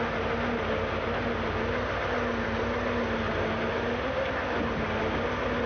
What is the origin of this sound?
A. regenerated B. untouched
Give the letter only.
B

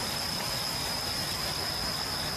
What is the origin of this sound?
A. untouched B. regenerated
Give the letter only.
A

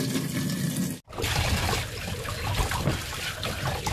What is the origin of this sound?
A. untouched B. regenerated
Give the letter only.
A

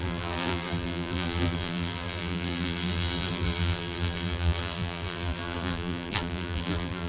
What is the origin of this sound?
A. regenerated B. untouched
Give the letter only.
A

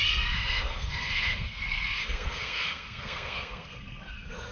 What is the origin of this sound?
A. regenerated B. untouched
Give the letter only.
A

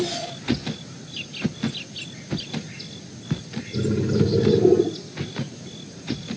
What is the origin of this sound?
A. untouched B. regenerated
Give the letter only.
A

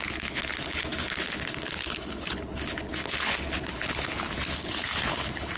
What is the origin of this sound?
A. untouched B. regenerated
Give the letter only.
B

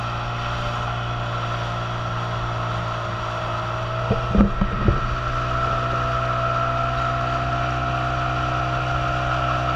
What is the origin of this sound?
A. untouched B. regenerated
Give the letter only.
A